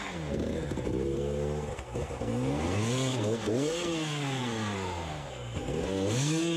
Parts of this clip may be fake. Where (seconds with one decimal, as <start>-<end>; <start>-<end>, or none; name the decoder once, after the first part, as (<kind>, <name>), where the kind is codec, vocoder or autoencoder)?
0.0-6.6 (codec, SNAC)